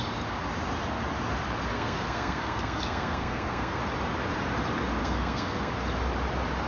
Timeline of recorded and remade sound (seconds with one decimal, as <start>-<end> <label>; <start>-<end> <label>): 0.0-1.7 recorded; 1.7-3.8 remade; 3.8-5.0 recorded; 5.0-5.7 remade; 5.7-6.7 recorded